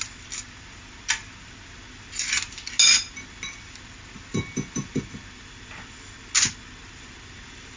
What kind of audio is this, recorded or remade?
recorded